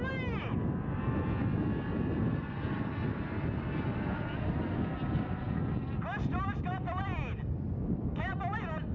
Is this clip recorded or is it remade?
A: recorded